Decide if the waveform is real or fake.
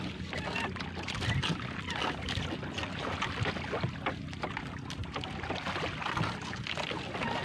real